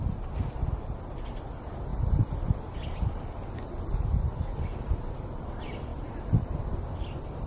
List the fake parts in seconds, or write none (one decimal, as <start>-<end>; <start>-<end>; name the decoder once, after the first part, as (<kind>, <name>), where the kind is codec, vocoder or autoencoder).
0.6-1.4 (vocoder, BigVGAN v2)